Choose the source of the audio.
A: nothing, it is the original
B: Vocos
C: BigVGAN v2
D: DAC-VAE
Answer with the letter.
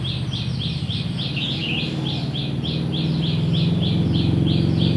A